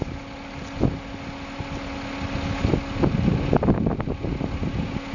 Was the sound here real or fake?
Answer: real